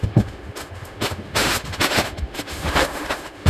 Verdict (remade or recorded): remade